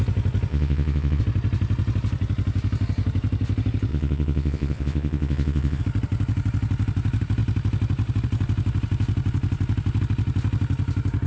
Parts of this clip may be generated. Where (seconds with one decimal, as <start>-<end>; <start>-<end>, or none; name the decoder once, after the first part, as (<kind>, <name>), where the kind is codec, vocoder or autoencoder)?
0.5-1.2 (vocoder, Vocos); 3.9-5.8

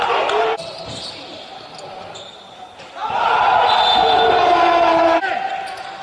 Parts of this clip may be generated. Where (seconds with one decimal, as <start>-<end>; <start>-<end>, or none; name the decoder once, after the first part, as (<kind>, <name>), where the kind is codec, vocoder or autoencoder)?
none

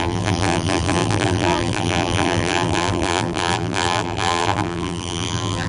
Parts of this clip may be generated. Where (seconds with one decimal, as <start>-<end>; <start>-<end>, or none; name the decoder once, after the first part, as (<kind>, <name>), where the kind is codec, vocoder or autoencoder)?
0.0-5.7 (vocoder, BigVGAN v2)

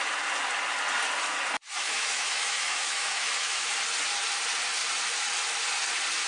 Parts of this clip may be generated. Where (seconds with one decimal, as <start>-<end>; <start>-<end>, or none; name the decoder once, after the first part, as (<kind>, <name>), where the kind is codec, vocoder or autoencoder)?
1.8-3.7 (autoencoder, DAC-VAE)

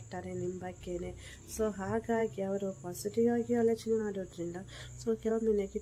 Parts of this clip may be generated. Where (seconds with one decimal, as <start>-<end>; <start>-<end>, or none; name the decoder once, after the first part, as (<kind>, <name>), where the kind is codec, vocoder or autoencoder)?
4.8-5.3 (codec, SNAC)

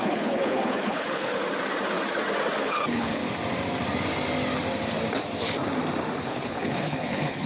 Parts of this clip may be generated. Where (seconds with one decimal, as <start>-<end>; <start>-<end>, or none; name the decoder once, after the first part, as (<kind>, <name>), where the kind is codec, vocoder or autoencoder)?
0.0-1.4 (codec, HILCodec); 2.6-3.2; 6.2-7.5